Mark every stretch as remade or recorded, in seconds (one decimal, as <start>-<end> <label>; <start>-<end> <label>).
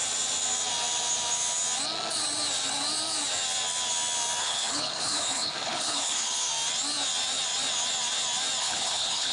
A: 0.0-4.4 recorded; 4.4-6.5 remade; 6.5-8.6 recorded; 8.6-9.3 remade